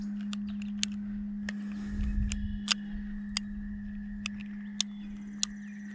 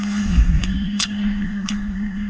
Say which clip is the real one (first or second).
first